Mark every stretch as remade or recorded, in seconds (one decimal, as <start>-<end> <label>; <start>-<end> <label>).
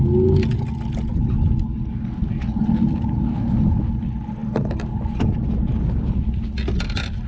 0.0-7.3 recorded